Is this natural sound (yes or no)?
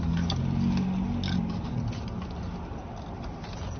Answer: yes